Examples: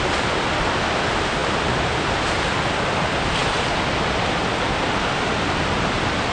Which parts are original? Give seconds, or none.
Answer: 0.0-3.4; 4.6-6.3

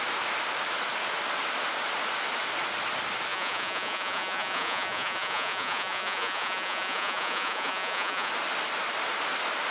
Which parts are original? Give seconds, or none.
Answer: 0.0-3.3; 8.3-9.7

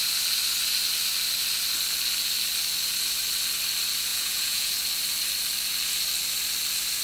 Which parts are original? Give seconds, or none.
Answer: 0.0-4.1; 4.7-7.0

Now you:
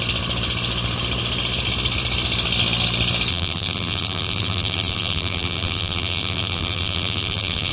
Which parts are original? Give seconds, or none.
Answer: 0.0-3.3

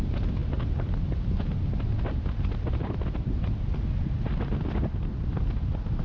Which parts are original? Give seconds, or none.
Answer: 0.0-6.0

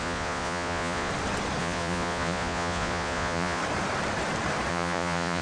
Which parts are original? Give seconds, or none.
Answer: 1.1-1.6; 3.6-4.7